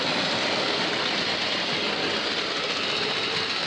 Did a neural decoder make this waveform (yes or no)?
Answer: no